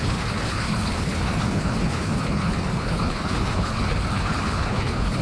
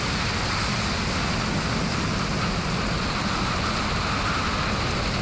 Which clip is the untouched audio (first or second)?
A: second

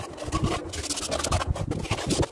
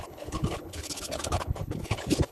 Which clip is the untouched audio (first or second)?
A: first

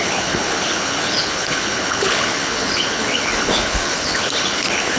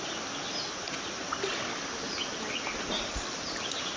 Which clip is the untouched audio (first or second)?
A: second